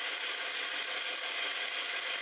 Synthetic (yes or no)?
no